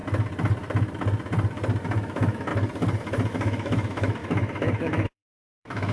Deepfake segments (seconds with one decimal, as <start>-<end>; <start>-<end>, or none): 1.8-2.5; 3.3-5.9